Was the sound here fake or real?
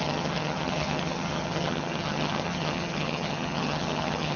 fake